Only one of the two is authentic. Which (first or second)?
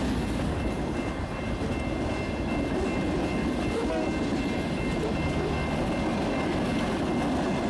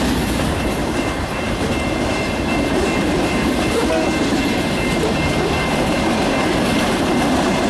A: first